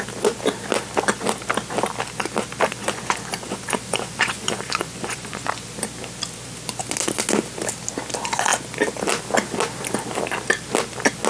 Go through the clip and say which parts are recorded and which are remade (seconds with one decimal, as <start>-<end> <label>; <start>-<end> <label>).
0.0-2.8 recorded; 2.8-5.7 remade; 5.7-11.3 recorded